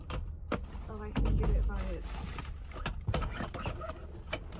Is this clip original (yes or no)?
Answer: yes